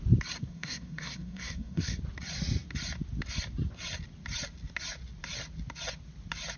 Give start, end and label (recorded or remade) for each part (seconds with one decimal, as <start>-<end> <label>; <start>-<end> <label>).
0.0-0.4 recorded; 0.4-2.0 remade; 2.0-6.6 recorded

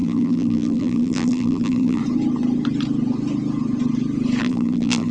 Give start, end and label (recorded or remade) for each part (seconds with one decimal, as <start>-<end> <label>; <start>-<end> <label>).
0.0-2.0 remade; 2.0-4.4 recorded; 4.4-5.1 remade